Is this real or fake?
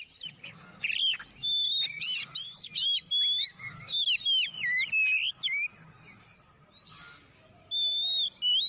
real